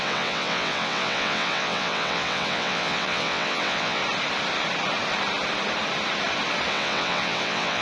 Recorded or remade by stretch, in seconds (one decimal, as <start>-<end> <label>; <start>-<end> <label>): 0.0-4.0 remade; 4.0-6.7 recorded; 6.7-7.8 remade